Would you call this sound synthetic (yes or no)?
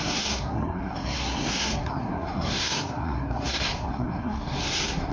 yes